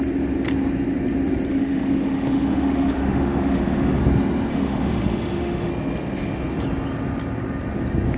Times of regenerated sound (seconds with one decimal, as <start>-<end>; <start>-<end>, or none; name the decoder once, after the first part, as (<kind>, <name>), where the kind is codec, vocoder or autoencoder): 1.5-4.0 (autoencoder, DAC-VAE); 4.5-5.7